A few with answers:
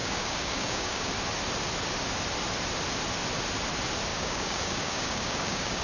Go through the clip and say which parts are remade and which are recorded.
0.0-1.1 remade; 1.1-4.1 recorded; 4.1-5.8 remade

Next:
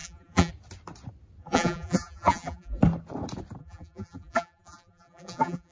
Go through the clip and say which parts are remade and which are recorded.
0.0-0.5 remade; 0.5-1.4 recorded; 1.4-2.8 remade; 2.8-3.6 recorded; 3.6-5.7 remade

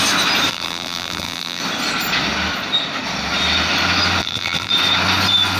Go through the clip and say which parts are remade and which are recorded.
0.0-0.5 recorded; 0.5-1.6 remade; 1.6-4.2 recorded; 4.2-4.7 remade; 4.7-5.6 recorded